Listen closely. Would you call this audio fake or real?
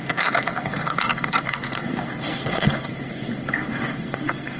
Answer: fake